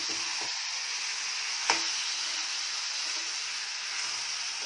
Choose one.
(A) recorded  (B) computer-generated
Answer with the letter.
A